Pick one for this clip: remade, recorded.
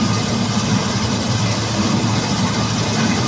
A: recorded